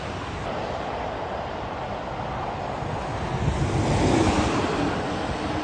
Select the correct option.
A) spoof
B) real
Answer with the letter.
B